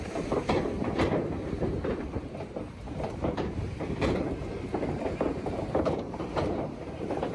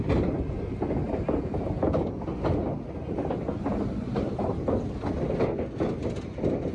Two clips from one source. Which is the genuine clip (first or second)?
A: second